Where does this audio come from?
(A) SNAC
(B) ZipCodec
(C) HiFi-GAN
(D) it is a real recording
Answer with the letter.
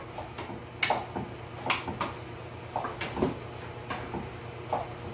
D